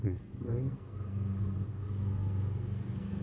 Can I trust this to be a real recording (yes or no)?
no